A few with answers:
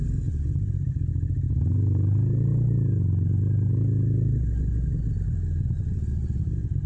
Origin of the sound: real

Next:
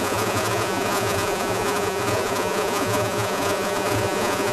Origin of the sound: fake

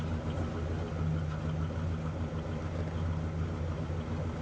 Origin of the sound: real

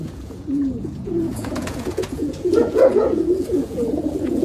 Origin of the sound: fake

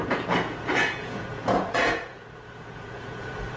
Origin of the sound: fake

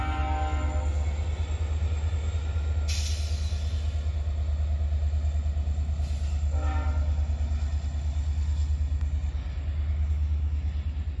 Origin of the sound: real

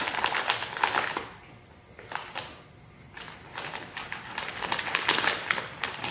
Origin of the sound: real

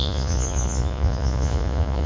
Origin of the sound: fake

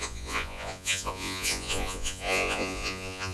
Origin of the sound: fake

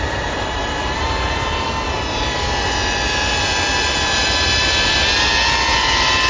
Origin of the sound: real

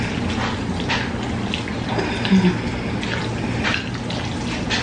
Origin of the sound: real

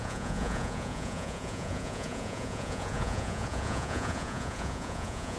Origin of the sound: fake